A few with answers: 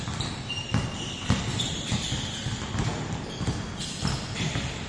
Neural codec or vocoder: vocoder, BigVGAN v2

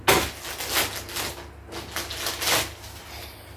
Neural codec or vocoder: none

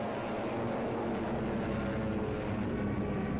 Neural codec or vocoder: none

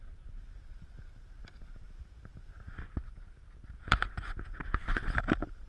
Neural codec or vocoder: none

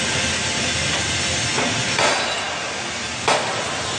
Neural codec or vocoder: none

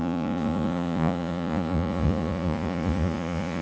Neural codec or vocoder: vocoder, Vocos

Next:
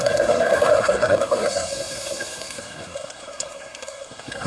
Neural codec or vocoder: codec, SNAC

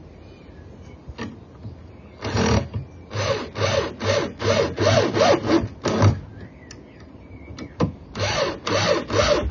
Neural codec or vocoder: none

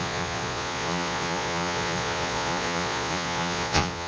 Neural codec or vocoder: vocoder, Vocos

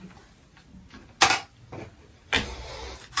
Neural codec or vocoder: none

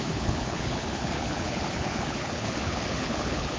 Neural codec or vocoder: codec, HILCodec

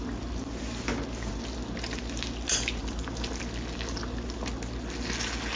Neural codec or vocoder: none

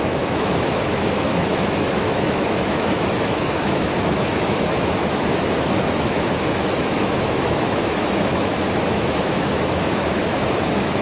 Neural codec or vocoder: autoencoder, DAC-VAE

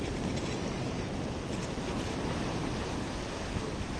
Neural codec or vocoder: none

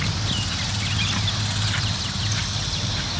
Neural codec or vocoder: none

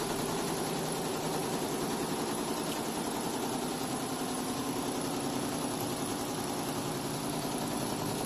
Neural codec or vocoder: none